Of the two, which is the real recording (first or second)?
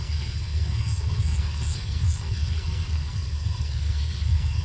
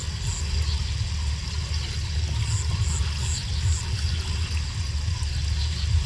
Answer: second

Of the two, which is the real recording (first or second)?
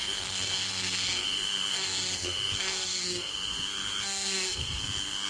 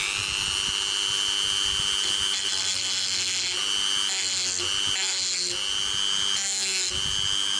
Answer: second